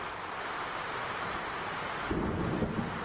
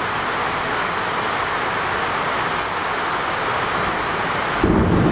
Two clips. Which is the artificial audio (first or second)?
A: first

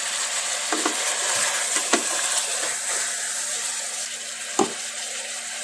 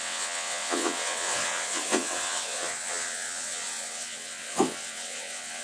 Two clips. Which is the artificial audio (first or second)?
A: second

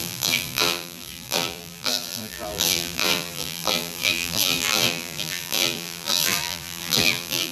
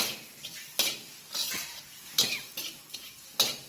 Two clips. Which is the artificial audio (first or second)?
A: first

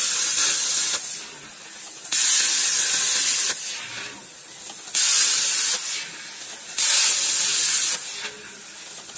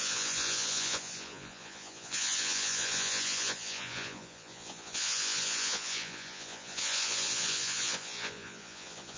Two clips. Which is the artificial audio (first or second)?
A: second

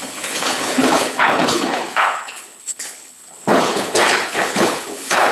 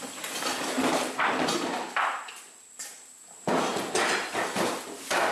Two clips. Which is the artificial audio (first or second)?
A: first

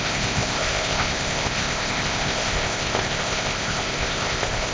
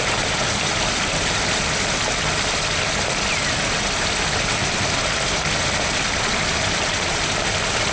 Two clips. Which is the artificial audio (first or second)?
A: first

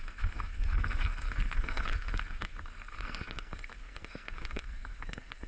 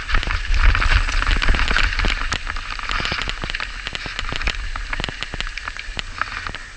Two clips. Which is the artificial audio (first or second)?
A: first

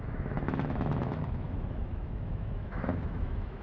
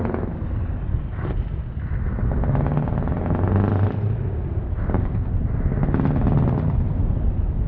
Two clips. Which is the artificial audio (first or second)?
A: first